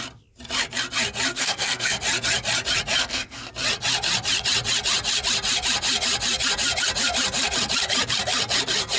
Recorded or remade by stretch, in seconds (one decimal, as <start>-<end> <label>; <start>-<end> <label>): 0.0-1.3 recorded; 1.3-2.0 remade; 2.0-3.0 recorded; 3.0-3.5 remade; 3.5-9.0 recorded